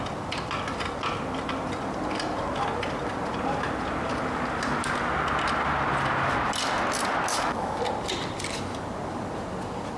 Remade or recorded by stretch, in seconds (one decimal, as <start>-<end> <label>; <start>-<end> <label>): 0.0-7.3 recorded; 7.3-7.8 remade; 7.8-10.0 recorded

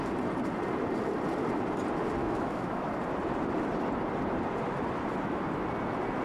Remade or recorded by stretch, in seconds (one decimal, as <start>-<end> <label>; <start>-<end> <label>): 0.0-2.2 recorded; 2.2-2.9 remade; 2.9-6.2 recorded

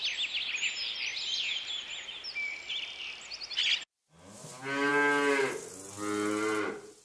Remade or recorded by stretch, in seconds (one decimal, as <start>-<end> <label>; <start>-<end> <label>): 0.0-7.0 recorded

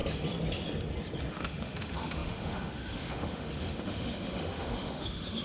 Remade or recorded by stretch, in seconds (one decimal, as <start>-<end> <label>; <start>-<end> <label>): 0.0-1.3 recorded; 1.3-5.4 remade

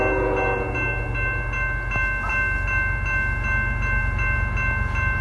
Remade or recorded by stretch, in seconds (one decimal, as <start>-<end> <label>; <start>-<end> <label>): 0.0-5.2 recorded

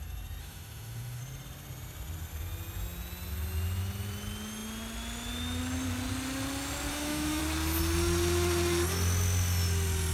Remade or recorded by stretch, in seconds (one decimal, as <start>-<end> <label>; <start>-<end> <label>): 0.0-0.4 recorded; 0.4-1.2 remade; 1.2-6.9 recorded; 6.9-7.4 remade; 7.4-10.1 recorded

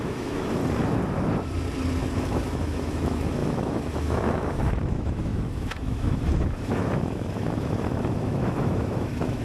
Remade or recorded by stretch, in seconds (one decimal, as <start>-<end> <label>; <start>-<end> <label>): 0.0-0.6 remade; 0.6-2.1 recorded; 2.1-9.4 remade

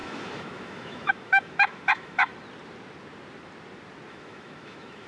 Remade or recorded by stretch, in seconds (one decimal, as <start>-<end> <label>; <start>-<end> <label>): 0.0-2.3 remade; 2.3-4.1 recorded; 4.1-5.1 remade